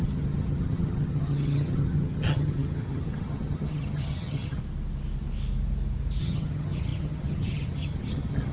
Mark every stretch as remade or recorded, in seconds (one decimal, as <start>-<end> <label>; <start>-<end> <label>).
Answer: 0.0-4.6 remade; 4.6-6.2 recorded; 6.2-8.5 remade